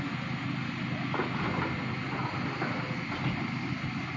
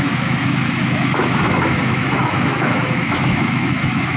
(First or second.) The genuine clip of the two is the first